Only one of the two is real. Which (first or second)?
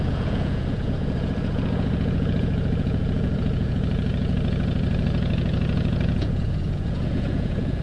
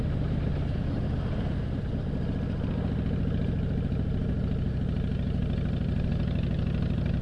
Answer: second